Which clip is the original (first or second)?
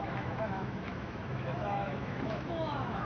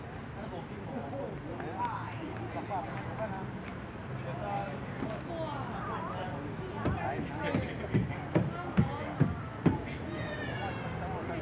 second